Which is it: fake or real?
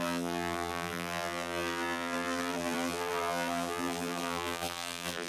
fake